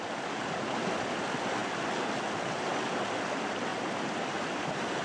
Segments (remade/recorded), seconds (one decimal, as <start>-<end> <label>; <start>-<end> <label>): 0.0-5.0 recorded